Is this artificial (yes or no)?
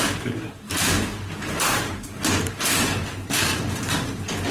yes